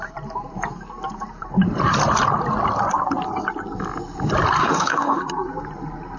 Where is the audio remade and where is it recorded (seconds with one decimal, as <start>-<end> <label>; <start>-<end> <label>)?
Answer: 0.0-4.6 recorded; 4.6-5.2 remade; 5.2-6.2 recorded